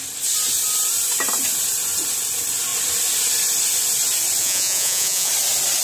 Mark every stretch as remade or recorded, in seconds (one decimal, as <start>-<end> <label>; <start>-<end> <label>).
0.0-4.4 recorded; 4.4-5.3 remade; 5.3-5.8 recorded